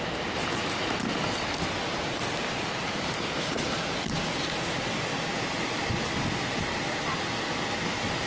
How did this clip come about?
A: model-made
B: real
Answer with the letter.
B